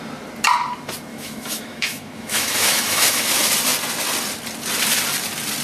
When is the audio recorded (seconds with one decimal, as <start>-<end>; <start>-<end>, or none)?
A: 0.0-1.1; 3.3-5.6